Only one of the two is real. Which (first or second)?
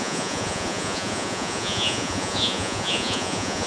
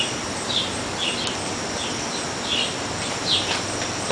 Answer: second